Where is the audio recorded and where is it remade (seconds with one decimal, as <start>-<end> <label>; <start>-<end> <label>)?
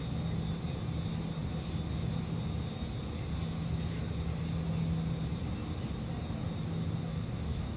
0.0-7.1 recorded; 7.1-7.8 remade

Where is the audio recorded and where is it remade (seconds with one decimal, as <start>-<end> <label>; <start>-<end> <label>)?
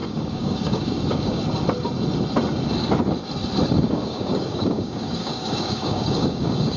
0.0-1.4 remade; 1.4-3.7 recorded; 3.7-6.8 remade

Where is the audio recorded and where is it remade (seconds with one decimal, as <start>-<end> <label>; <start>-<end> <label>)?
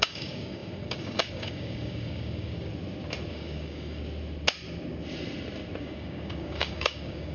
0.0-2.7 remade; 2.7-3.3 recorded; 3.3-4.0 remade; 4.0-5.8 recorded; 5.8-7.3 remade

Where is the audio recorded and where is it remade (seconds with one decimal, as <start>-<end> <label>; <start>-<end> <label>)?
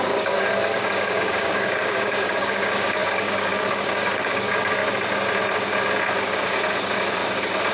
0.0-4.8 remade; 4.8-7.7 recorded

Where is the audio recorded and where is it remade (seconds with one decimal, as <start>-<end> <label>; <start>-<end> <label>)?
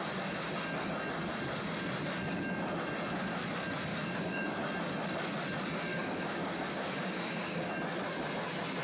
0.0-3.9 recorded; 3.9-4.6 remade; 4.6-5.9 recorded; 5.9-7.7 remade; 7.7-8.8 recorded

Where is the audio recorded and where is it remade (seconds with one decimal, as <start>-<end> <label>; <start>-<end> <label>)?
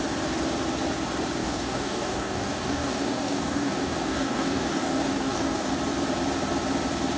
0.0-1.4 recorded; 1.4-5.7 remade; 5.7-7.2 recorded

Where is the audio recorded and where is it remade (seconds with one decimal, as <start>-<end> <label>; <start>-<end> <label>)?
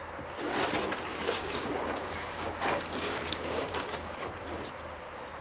0.0-1.1 recorded; 1.1-3.7 remade; 3.7-5.4 recorded